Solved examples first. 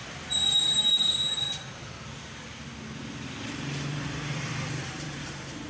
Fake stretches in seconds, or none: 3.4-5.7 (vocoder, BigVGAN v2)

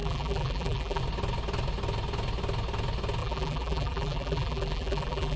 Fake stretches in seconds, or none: 0.0-1.0 (vocoder, BigVGAN v2); 3.2-5.4

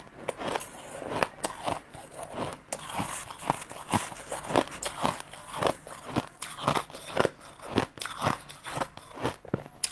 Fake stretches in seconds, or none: none

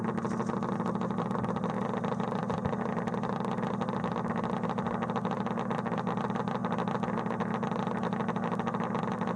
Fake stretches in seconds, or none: none

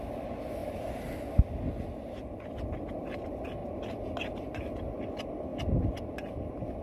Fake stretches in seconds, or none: none

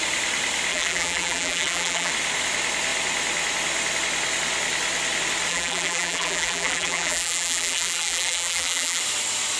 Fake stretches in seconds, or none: 0.7-2.1 (vocoder, BigVGAN v2); 5.5-9.0